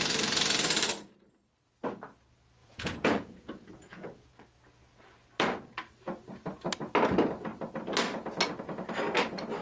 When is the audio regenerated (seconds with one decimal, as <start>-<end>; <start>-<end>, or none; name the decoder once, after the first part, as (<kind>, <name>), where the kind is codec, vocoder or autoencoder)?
2.6-4.3 (vocoder, Vocos)